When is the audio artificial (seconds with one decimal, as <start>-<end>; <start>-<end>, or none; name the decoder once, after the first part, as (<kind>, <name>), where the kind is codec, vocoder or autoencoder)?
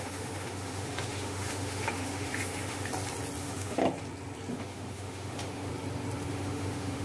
0.0-2.9 (autoencoder, DAC-VAE); 3.4-3.8; 4.5-5.7; 6.3-7.0